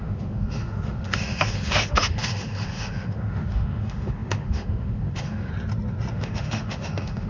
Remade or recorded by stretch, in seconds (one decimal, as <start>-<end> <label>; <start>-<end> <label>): 0.0-5.5 remade; 5.5-6.1 recorded; 6.1-7.3 remade